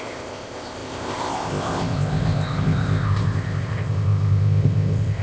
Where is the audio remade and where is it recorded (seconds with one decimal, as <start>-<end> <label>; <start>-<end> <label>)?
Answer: 0.0-5.2 remade

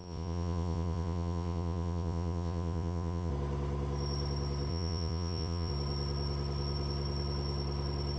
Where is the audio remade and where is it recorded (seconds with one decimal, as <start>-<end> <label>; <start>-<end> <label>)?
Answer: 0.0-3.3 remade; 3.3-4.7 recorded; 4.7-5.7 remade; 5.7-8.2 recorded

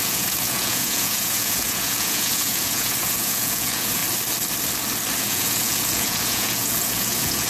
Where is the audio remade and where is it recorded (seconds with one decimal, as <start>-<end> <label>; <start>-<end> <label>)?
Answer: 0.0-4.0 remade; 4.0-5.2 recorded; 5.2-7.5 remade

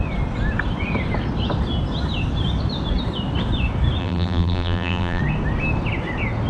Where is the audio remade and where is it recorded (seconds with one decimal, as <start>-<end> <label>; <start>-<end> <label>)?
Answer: 0.0-4.0 recorded; 4.0-5.2 remade; 5.2-6.5 recorded

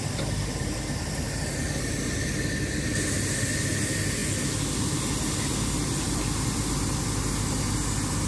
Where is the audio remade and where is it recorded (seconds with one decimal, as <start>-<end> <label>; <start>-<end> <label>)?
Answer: 0.0-8.3 recorded

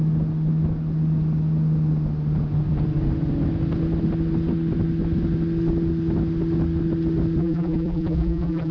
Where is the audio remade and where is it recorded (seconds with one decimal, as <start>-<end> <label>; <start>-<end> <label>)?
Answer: 0.0-7.4 recorded; 7.4-8.7 remade

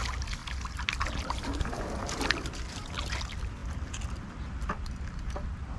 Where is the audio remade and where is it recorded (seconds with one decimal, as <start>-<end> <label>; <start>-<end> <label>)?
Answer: 0.0-5.8 recorded